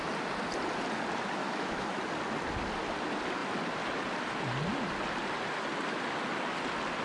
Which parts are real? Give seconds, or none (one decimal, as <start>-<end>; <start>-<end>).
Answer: 0.0-1.4; 2.0-7.0